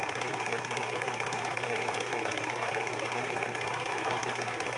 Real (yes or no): no